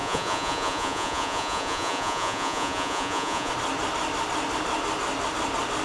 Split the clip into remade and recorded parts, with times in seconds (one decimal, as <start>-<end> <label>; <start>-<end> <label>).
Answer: 0.0-3.5 remade; 3.5-5.8 recorded